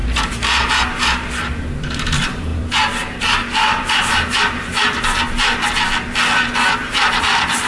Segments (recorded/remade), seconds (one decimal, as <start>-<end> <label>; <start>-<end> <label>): 0.0-4.7 remade; 4.7-6.6 recorded; 6.6-7.7 remade